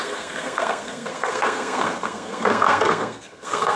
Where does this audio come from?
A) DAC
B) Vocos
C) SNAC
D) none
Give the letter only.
C